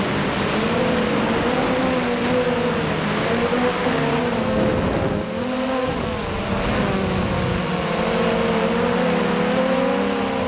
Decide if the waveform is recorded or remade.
recorded